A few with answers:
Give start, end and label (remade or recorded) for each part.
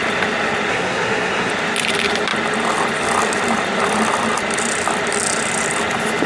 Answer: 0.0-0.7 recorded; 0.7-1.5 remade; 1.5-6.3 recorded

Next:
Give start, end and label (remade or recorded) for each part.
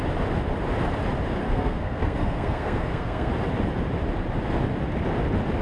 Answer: 0.0-1.4 recorded; 1.4-3.3 remade; 3.3-5.6 recorded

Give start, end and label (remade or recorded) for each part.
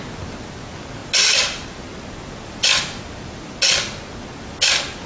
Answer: 0.0-5.1 recorded